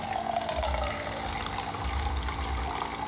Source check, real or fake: real